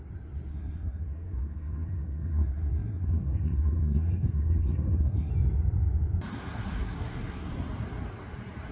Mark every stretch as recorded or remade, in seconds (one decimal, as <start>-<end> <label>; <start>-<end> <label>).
0.0-0.5 recorded; 0.5-5.3 remade; 5.3-6.5 recorded; 6.5-7.5 remade; 7.5-8.7 recorded

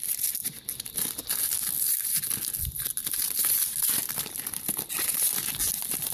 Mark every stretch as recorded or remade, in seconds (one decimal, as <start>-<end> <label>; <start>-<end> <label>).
0.0-6.1 recorded